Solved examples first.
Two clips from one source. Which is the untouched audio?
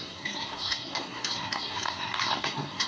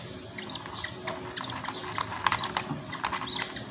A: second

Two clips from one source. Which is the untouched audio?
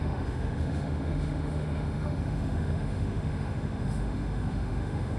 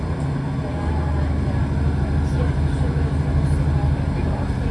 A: second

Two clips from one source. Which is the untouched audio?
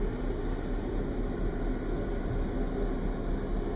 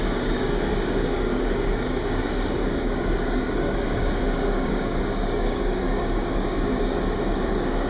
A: first